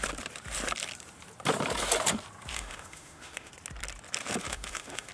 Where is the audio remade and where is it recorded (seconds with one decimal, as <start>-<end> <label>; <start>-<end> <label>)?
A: 0.0-2.5 recorded; 2.5-3.5 remade; 3.5-4.4 recorded; 4.4-5.1 remade